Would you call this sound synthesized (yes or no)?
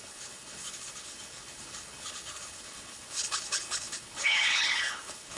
yes